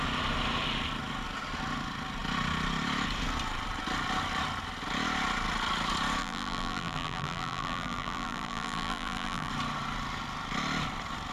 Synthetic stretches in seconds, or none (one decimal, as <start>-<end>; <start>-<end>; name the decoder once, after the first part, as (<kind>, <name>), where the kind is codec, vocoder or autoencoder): 6.2-9.5 (vocoder, BigVGAN v2)